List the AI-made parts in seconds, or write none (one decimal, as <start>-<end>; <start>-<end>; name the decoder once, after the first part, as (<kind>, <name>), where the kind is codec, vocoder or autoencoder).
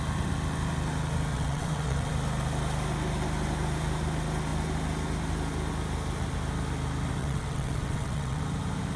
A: 1.3-2.1 (vocoder, WaveNeXt); 7.2-8.4